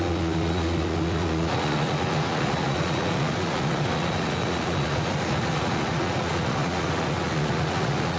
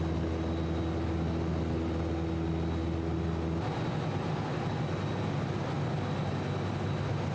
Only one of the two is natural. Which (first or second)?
second